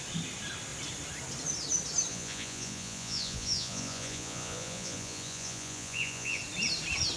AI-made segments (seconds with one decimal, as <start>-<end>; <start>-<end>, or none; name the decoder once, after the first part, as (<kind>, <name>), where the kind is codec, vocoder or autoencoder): 2.1-6.4 (vocoder, Vocos)

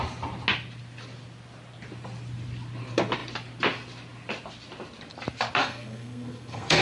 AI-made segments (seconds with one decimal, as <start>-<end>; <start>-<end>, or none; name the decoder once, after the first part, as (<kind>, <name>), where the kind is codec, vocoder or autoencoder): 5.6-6.8 (codec, SNAC)